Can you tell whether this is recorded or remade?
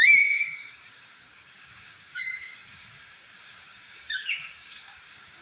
remade